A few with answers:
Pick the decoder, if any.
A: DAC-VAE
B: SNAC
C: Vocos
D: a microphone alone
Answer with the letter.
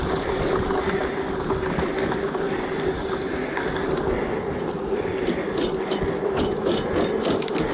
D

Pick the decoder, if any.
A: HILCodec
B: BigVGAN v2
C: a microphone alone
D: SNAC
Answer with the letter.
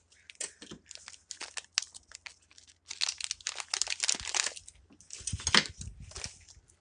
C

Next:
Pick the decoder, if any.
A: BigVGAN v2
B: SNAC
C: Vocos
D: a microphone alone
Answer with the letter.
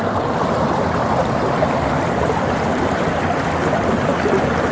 A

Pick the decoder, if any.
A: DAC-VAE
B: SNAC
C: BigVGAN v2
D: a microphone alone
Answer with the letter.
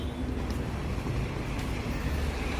D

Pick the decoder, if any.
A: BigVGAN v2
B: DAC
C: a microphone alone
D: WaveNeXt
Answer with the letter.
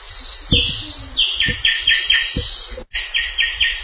C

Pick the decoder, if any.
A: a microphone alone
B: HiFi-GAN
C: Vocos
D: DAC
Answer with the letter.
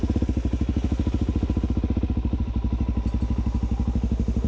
A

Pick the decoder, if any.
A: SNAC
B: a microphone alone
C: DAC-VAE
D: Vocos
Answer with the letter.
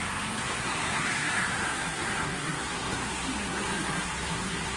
A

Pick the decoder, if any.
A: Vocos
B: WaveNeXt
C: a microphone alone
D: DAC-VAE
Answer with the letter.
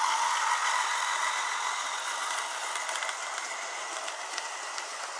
C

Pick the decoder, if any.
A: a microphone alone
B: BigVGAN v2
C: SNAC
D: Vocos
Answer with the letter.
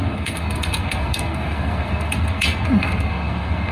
C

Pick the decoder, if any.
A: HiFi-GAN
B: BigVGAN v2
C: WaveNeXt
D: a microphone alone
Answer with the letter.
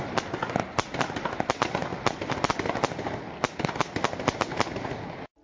D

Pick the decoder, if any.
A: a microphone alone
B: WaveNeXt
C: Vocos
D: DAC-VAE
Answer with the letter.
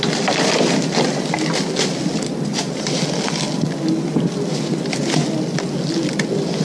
A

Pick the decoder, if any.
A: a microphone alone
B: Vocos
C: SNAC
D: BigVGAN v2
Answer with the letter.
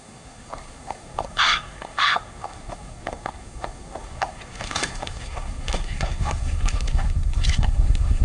C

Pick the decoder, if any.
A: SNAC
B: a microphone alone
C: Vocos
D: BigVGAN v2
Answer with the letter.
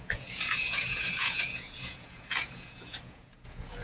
C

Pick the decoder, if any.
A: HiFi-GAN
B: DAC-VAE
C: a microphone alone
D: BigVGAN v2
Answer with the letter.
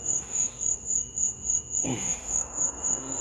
B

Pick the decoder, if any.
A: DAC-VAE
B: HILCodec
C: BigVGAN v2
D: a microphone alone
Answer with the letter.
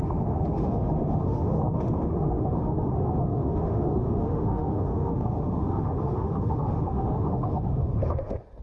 A